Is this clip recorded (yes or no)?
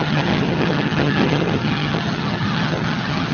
no